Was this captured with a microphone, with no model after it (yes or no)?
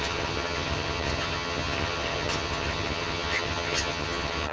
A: no